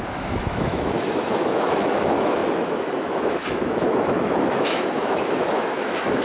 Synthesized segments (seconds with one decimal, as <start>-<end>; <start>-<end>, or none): 0.0-6.2